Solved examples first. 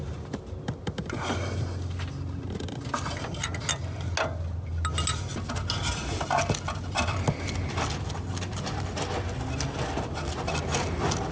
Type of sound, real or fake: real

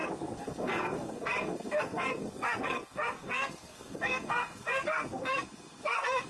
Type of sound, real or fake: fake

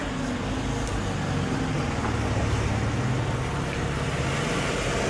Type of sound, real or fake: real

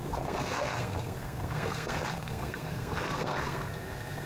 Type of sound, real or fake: fake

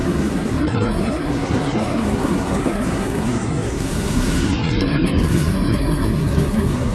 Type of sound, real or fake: fake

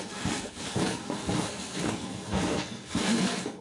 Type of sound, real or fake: fake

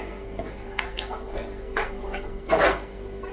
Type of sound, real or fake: fake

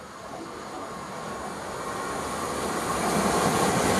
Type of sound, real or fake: real